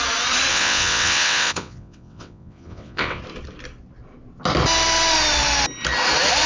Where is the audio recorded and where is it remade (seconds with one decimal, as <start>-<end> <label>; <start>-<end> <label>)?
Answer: 0.0-0.5 recorded; 0.5-3.2 remade; 3.2-6.5 recorded